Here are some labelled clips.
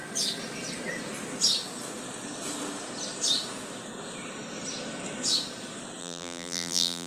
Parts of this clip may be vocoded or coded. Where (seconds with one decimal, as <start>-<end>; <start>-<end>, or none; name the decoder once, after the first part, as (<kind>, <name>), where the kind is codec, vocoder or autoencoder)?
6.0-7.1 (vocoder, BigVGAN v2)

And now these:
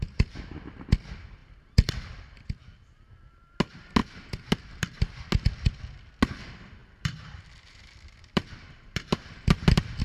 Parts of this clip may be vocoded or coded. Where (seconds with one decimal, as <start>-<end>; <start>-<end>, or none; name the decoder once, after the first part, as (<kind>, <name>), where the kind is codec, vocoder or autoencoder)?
1.4-2.4 (vocoder, BigVGAN v2); 4.0-5.0; 6.8-10.0

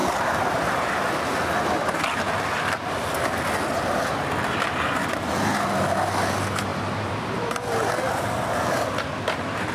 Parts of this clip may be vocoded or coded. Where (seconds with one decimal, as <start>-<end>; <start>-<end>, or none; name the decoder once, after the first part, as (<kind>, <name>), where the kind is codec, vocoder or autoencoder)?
6.7-7.9 (vocoder, BigVGAN v2)

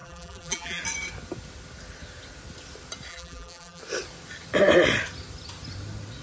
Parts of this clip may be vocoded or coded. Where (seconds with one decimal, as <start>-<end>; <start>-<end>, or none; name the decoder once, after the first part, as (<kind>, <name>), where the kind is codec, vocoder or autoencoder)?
0.0-0.8 (vocoder, BigVGAN v2); 3.1-3.8

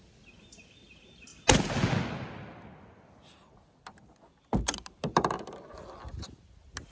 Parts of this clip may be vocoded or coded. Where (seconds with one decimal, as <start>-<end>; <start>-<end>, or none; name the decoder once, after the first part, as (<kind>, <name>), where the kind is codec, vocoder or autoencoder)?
none